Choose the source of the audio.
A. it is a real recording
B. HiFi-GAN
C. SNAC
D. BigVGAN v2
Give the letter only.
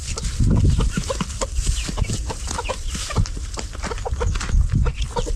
A